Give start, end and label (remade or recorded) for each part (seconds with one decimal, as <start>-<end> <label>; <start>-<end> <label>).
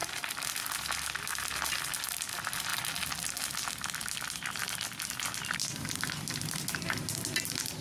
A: 0.0-7.8 recorded